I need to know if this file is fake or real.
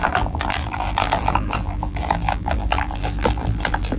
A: fake